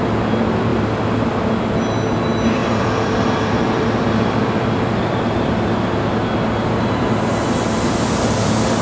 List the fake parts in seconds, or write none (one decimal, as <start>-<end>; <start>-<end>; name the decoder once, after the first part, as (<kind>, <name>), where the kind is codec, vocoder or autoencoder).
0.7-1.5 (vocoder, BigVGAN v2); 2.6-6.1; 6.6-7.3

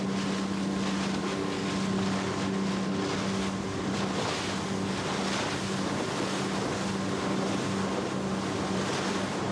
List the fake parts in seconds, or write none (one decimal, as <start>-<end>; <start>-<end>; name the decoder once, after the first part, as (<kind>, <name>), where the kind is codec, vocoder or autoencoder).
1.2-1.7 (codec, DAC)

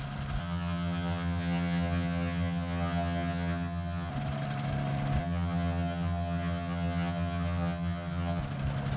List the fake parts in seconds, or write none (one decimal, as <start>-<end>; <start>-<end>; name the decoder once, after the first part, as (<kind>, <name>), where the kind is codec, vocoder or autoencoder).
0.4-4.1 (vocoder, HiFi-GAN); 5.2-8.4

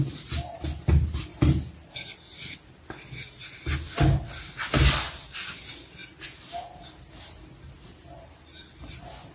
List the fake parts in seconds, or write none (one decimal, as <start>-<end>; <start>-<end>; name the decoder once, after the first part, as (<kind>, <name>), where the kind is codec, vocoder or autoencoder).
none

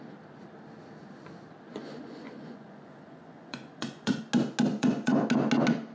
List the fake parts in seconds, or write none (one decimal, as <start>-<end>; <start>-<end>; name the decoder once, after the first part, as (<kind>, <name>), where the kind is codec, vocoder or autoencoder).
1.7-4.2 (vocoder, Vocos); 4.7-5.2

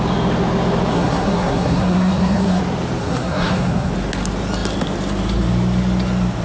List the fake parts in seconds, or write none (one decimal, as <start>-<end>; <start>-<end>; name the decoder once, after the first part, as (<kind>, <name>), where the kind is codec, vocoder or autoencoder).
0.9-2.6 (codec, SNAC); 3.0-3.9

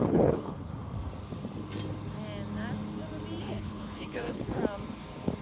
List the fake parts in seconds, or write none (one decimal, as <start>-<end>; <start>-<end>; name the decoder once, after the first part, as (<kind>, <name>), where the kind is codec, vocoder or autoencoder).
0.0-0.7 (codec, HILCodec); 3.4-4.6

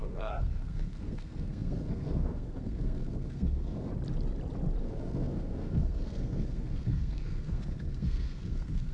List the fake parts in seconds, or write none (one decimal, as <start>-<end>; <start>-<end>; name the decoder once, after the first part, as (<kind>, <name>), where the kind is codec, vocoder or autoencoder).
0.0-3.9 (codec, SNAC); 4.8-8.9